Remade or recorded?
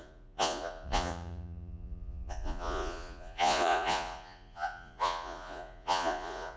remade